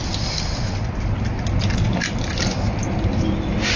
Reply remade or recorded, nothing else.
recorded